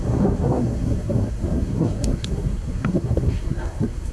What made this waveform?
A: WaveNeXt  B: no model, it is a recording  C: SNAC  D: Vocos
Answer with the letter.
C